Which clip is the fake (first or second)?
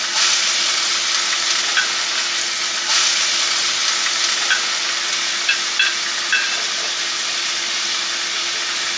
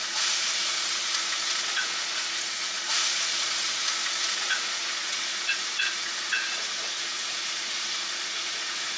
second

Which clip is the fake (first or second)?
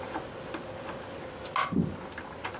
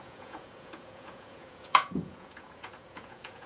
second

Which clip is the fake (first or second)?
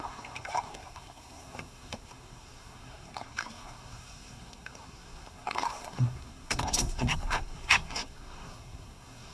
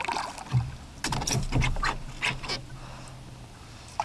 first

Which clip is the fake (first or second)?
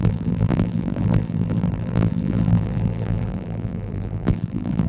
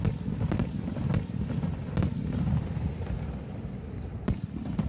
first